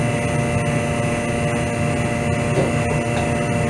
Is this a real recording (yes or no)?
yes